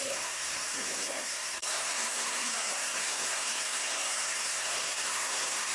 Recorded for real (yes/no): no